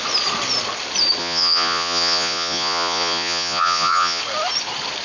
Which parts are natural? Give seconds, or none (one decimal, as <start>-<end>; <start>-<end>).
0.0-1.2; 4.2-5.0